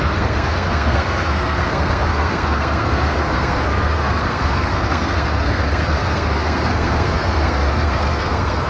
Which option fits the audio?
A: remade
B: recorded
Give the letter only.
A